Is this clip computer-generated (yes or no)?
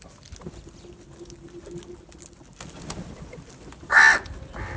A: no